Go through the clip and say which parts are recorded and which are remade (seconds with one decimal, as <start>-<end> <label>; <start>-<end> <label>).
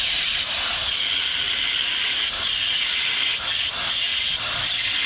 0.0-5.1 recorded